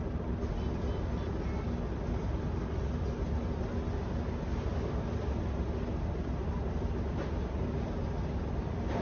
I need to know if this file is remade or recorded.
recorded